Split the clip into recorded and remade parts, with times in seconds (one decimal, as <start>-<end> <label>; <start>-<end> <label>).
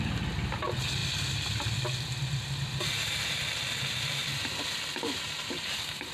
0.0-6.1 recorded